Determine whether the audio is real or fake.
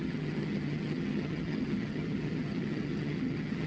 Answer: fake